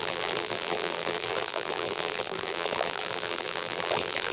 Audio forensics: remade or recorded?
remade